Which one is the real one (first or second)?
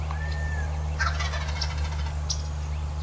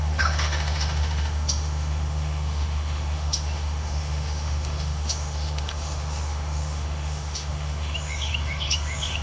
first